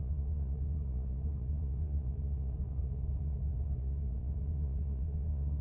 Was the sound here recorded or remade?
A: remade